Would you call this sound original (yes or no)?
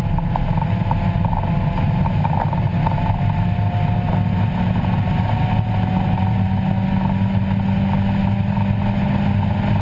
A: yes